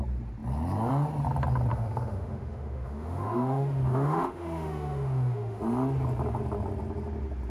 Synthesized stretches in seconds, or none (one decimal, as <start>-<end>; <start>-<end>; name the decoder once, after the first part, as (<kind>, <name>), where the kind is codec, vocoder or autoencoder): 1.7-5.6 (autoencoder, DAC-VAE)